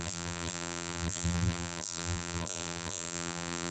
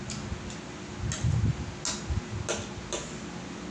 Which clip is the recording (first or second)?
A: second